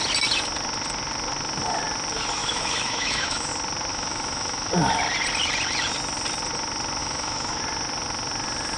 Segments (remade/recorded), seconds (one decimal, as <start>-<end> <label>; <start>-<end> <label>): 0.0-2.4 recorded; 2.4-3.5 remade; 3.5-3.9 recorded; 3.9-4.7 remade; 4.7-7.0 recorded; 7.0-7.6 remade; 7.6-8.8 recorded